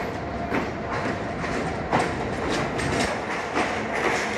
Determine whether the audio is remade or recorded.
recorded